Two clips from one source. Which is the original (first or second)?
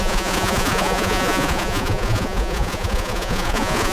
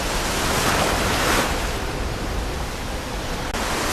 second